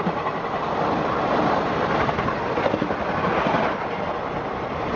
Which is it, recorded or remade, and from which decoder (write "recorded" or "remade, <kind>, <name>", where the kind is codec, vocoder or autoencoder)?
recorded